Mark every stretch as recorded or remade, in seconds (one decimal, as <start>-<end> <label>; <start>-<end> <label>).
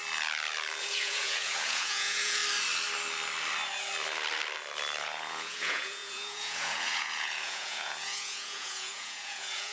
0.0-0.8 recorded; 0.8-2.4 remade; 2.4-5.0 recorded; 5.0-9.7 remade